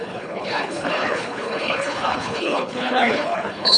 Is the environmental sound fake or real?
fake